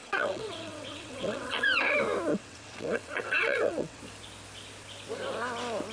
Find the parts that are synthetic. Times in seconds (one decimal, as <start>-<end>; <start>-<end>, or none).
0.0-1.8; 2.3-4.0